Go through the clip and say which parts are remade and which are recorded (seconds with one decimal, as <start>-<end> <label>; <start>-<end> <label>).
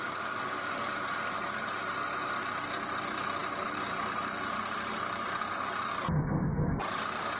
0.0-7.4 recorded